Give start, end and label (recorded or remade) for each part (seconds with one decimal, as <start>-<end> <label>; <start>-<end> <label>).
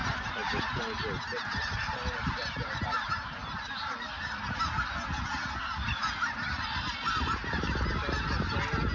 0.0-8.9 recorded